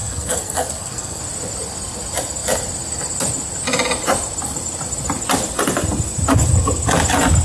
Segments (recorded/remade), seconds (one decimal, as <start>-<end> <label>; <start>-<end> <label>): 0.0-1.2 remade; 1.2-7.4 recorded